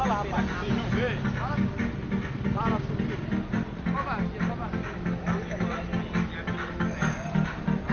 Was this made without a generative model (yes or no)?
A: yes